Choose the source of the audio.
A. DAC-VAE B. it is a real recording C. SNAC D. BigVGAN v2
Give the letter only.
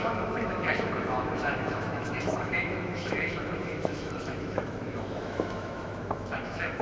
A